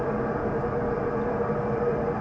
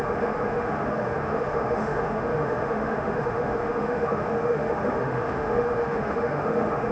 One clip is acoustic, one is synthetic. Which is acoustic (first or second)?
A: first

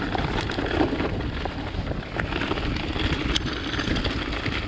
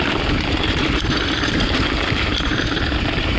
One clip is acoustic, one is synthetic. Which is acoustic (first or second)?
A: first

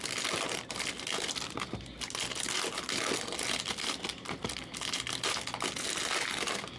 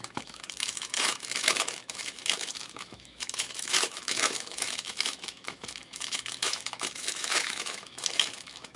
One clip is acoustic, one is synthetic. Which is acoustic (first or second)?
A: first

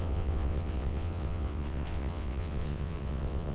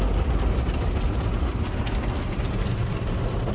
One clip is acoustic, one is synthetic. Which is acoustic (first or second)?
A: second